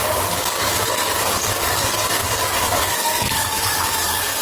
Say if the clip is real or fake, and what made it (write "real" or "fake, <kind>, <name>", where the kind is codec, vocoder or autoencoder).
fake, codec, DAC